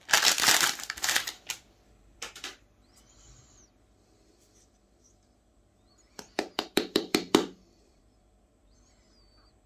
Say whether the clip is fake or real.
fake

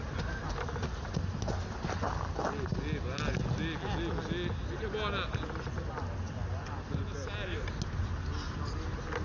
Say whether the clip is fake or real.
real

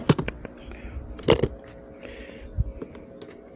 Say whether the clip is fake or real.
real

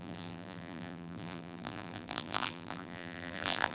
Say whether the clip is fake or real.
fake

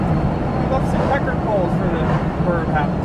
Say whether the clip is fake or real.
real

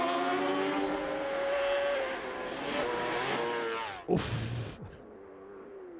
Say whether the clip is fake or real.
real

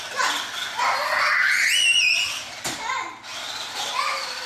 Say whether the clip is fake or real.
real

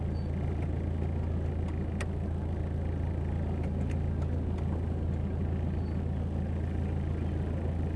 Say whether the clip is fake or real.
real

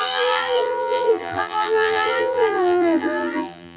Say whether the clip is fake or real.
fake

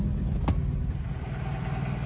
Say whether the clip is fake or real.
real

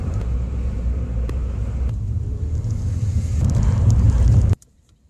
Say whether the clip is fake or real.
fake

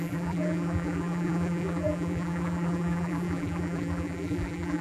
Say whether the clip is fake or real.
fake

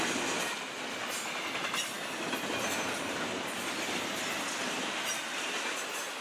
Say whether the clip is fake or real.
real